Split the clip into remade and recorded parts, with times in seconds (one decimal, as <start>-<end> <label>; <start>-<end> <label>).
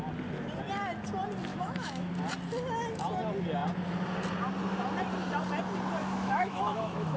0.0-1.5 recorded; 1.5-2.1 remade; 2.1-6.0 recorded; 6.0-7.2 remade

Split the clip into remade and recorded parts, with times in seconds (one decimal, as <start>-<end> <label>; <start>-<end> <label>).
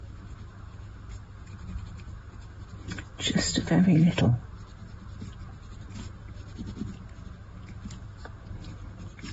0.0-3.6 recorded; 3.6-4.2 remade; 4.2-9.3 recorded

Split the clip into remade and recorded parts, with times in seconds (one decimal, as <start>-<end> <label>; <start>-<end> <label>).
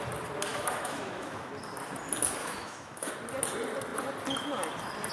0.0-0.5 recorded; 0.5-1.5 remade; 1.5-2.4 recorded; 2.4-3.1 remade; 3.1-5.1 recorded